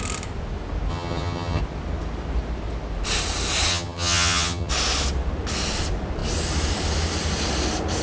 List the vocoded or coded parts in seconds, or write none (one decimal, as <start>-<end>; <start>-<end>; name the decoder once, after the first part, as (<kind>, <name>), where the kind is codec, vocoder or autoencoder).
0.9-1.6 (vocoder, HiFi-GAN); 3.7-4.7